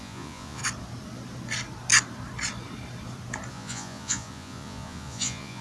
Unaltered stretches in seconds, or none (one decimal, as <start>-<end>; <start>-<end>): 0.6-3.5

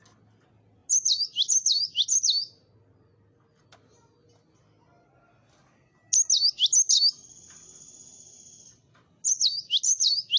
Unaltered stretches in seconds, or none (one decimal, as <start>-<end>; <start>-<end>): 0.0-10.4